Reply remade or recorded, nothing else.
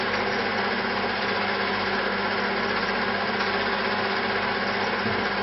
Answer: recorded